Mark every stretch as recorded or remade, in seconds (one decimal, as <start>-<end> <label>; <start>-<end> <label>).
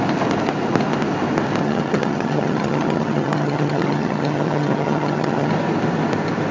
0.0-1.6 recorded; 1.6-5.5 remade; 5.5-6.5 recorded